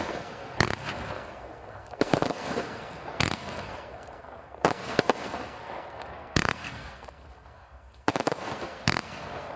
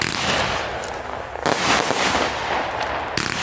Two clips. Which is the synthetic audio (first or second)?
first